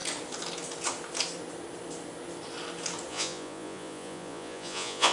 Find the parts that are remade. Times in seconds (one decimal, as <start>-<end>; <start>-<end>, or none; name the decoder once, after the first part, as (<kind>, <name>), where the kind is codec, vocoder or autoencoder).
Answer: 3.1-5.1 (vocoder, Vocos)